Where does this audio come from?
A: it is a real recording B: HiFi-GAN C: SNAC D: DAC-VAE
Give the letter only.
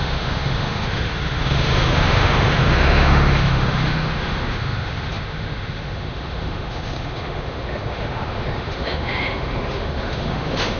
D